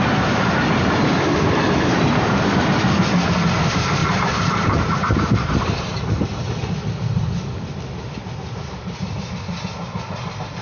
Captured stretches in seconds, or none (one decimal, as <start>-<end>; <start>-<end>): 0.0-4.0; 5.9-10.6